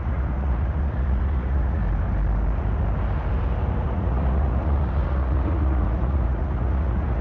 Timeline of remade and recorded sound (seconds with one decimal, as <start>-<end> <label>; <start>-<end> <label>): 0.0-1.8 remade; 1.8-3.8 recorded; 3.8-7.2 remade